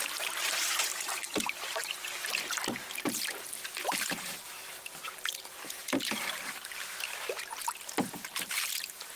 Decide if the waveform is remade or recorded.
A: remade